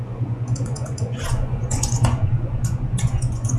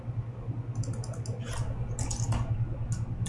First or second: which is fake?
first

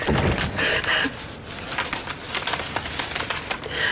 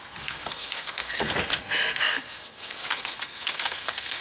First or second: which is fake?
second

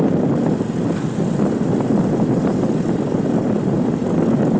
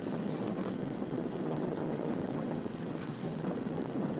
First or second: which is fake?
second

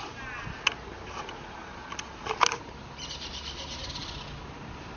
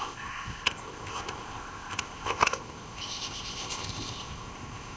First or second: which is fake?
second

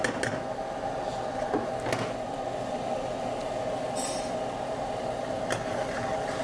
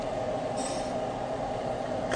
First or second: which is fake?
second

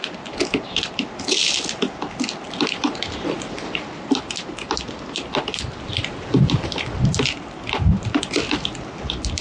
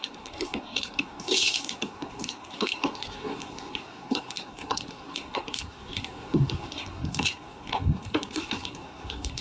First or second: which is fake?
second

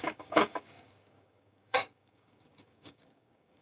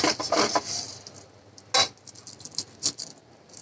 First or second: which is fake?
first